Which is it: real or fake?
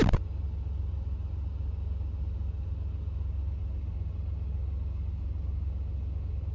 real